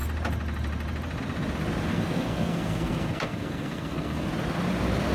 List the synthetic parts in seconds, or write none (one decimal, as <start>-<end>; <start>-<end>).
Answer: 1.9-4.3

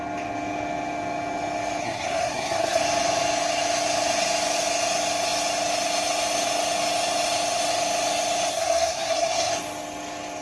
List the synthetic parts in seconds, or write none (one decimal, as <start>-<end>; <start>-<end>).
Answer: 1.8-2.8; 8.5-9.5

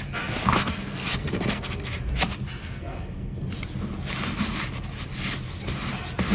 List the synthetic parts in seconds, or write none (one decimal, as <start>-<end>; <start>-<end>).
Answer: 0.4-1.9; 2.6-3.4

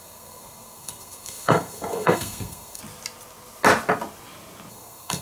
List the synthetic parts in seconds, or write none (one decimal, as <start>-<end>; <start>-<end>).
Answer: 0.0-2.8; 4.7-5.2

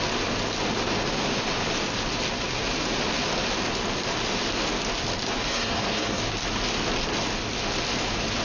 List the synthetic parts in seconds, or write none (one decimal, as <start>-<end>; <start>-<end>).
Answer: 5.5-6.2

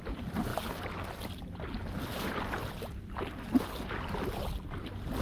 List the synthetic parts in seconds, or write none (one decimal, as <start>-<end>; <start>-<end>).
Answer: none

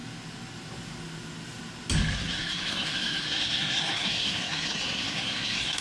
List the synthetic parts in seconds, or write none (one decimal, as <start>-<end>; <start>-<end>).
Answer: 2.1-5.8